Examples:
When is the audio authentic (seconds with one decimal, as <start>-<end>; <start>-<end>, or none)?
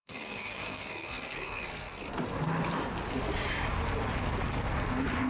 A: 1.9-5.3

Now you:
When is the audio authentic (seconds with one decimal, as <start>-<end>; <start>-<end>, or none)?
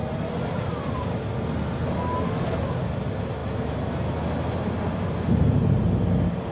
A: 0.0-6.5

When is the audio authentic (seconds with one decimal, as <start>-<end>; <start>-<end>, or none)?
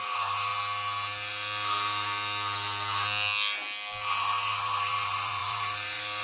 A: 0.5-4.2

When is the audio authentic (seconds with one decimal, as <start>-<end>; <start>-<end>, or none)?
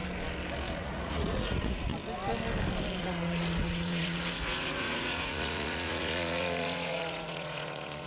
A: 0.0-0.8; 1.9-3.0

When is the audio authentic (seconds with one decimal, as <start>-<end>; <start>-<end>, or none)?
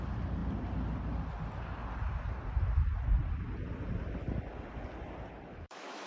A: 0.0-5.5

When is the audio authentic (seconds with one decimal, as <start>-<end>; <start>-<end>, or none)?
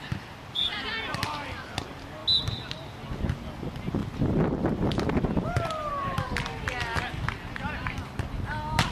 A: 0.0-4.0; 5.9-8.9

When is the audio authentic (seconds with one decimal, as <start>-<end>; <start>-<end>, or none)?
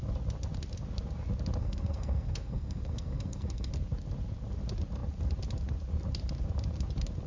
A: 0.0-1.6; 3.7-7.3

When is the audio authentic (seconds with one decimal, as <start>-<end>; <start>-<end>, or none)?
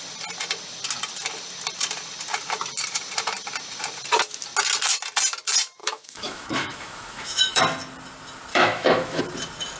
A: 0.0-5.8; 7.6-8.5; 9.2-9.8